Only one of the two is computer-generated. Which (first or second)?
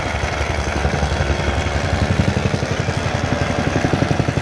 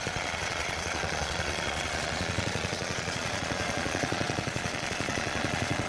second